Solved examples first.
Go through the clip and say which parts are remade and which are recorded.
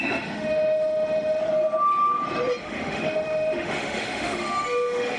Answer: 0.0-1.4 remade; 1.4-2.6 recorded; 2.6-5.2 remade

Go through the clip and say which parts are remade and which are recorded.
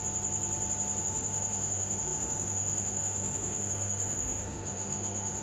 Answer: 0.0-1.0 recorded; 1.0-5.4 remade